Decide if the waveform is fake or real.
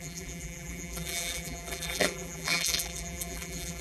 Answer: fake